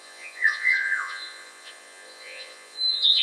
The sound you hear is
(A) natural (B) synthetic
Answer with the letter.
B